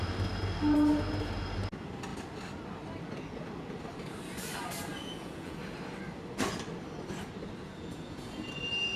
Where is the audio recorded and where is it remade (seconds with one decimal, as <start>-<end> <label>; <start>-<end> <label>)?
0.0-4.9 recorded; 4.9-5.6 remade; 5.6-7.7 recorded; 7.7-8.5 remade; 8.5-9.0 recorded